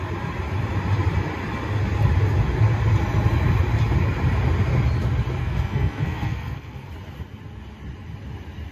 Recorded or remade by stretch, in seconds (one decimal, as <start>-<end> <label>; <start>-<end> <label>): 0.0-5.4 recorded; 5.4-6.9 remade; 6.9-8.7 recorded